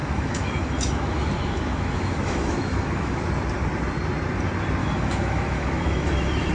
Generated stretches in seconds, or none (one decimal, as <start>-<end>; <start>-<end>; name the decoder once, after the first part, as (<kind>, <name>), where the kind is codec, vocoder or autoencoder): 0.0-3.2 (autoencoder, DAC-VAE); 4.8-6.5